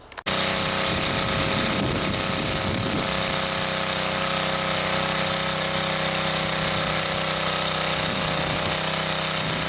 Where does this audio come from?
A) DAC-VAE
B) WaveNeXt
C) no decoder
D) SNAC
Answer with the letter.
C